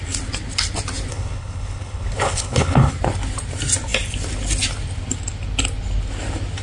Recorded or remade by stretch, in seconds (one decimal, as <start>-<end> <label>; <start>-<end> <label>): 0.0-1.1 recorded; 1.1-2.9 remade; 2.9-6.6 recorded